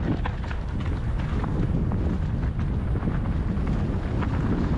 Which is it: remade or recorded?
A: recorded